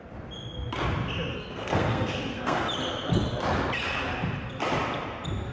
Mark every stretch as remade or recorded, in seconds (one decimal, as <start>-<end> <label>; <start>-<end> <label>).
0.0-1.3 recorded; 1.3-2.6 remade; 2.6-5.5 recorded